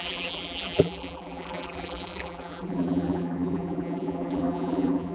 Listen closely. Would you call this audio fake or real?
fake